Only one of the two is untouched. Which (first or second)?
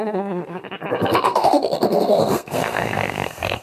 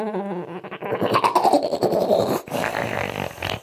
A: second